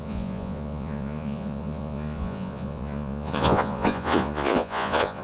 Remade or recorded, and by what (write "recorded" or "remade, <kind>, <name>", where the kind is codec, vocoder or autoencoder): remade, vocoder, Vocos